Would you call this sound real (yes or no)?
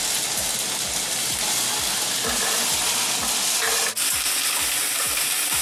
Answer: yes